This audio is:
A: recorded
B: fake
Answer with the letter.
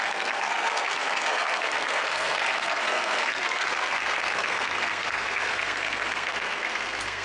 B